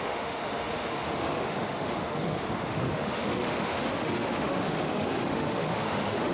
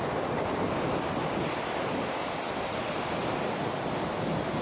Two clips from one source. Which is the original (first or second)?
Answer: second